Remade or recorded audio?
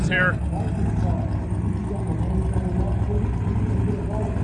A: recorded